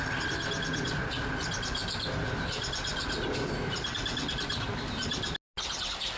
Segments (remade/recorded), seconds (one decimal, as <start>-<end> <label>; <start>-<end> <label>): 0.0-6.2 recorded